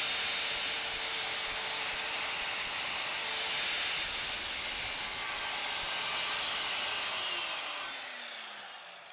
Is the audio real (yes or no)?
yes